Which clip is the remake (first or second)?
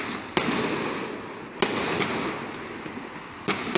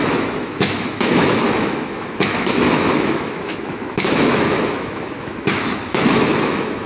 second